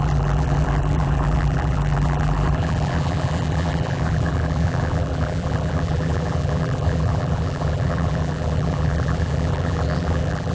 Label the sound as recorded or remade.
remade